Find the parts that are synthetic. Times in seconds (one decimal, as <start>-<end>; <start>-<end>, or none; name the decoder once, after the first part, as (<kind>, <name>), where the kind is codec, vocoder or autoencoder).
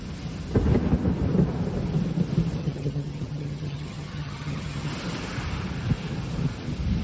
2.6-4.9 (vocoder, HiFi-GAN)